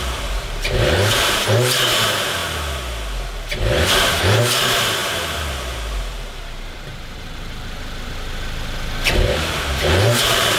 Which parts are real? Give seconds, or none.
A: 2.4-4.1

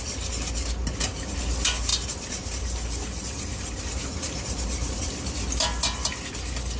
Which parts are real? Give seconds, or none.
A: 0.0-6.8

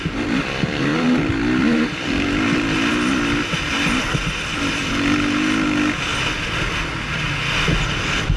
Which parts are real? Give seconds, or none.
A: 0.0-0.9; 4.6-6.1; 7.2-8.4

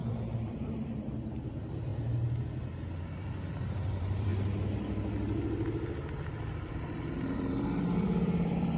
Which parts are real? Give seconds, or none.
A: 1.9-3.0; 4.3-6.7